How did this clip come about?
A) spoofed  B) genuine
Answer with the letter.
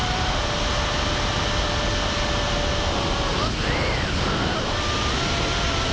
B